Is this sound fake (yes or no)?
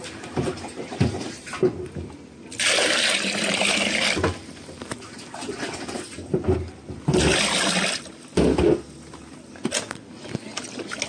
no